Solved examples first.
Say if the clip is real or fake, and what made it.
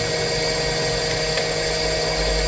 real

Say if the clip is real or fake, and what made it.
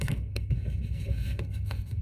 fake, codec, SNAC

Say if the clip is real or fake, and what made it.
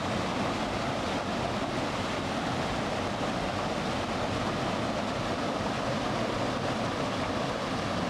real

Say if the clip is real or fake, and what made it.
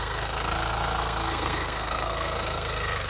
fake, codec, SNAC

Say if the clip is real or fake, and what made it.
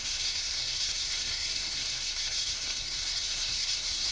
fake, codec, SNAC